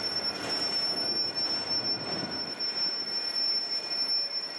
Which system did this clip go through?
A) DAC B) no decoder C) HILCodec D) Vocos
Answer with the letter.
B